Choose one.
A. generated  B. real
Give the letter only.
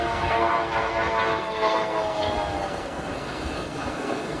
A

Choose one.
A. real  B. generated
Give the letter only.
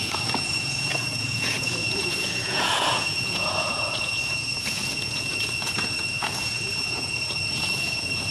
B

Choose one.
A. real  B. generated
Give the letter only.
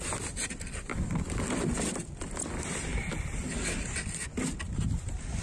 A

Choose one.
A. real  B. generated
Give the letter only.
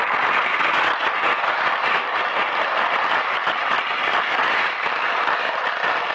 A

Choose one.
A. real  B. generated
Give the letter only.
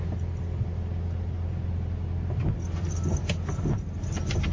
A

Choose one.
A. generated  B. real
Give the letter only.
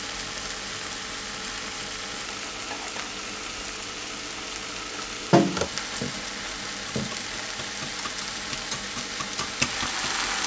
B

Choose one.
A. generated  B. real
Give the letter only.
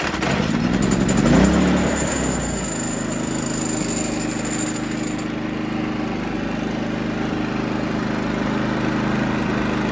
B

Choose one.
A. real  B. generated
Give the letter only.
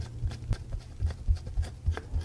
A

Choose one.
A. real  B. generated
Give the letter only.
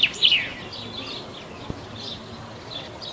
A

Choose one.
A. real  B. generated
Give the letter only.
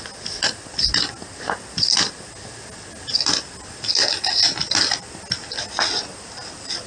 A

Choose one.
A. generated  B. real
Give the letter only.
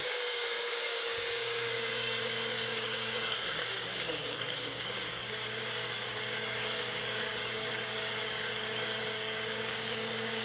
A